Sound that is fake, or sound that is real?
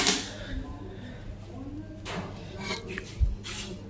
real